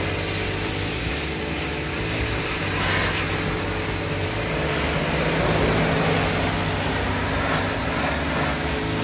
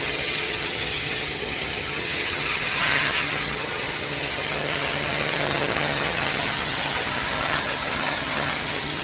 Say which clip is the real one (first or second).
first